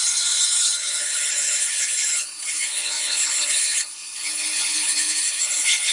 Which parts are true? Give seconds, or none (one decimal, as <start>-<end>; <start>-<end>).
none